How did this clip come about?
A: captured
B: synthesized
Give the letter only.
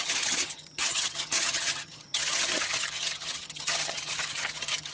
B